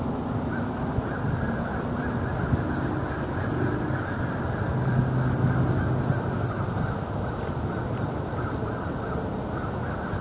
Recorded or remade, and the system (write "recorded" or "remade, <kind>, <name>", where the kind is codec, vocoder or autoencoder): recorded